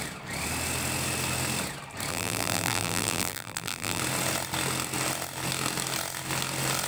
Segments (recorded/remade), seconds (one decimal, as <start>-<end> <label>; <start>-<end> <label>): 0.0-2.1 recorded; 2.1-4.0 remade; 4.0-6.9 recorded